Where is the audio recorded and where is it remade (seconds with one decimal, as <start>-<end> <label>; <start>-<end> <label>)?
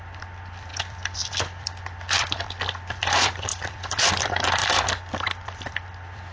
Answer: 0.0-6.3 remade